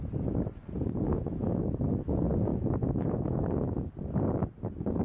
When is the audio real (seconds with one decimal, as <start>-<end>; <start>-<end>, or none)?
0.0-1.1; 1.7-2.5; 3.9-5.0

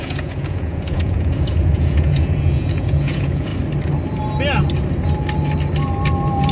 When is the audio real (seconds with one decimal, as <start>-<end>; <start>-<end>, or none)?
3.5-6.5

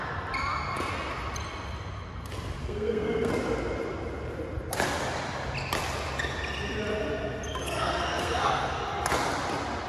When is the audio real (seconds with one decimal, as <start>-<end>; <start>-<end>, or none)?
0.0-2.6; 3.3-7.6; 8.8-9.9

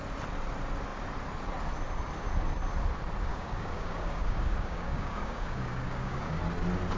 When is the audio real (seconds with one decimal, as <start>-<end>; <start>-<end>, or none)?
0.0-3.3; 6.4-7.0

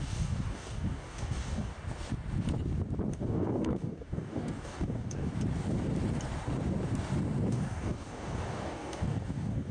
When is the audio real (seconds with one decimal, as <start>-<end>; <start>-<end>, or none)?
1.7-3.1; 5.3-7.5

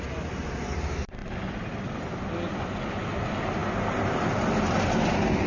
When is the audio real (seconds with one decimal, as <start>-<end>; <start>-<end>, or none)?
0.0-5.5

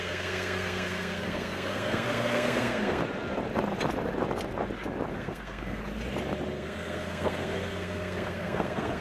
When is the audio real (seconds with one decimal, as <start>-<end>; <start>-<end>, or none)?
3.0-5.1; 5.8-6.5